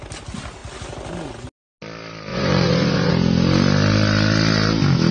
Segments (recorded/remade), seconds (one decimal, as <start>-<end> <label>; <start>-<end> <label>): 0.0-2.3 recorded; 2.3-3.1 remade; 3.1-5.1 recorded